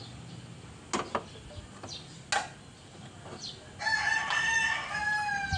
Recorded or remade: recorded